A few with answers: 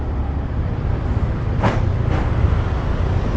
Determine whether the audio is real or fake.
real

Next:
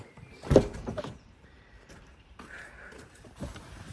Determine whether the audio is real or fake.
fake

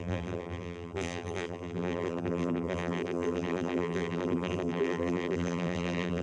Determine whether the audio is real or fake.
fake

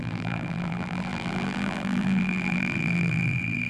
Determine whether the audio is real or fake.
fake